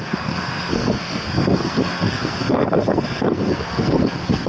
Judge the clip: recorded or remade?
remade